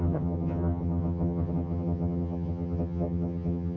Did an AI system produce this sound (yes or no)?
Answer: yes